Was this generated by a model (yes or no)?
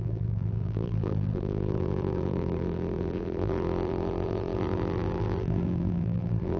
yes